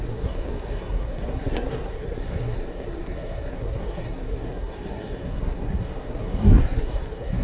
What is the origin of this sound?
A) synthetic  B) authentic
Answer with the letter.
A